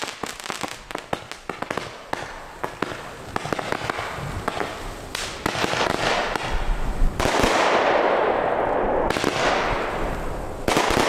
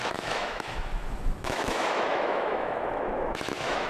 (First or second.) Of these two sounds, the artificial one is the second